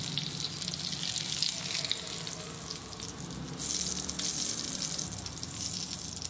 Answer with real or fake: real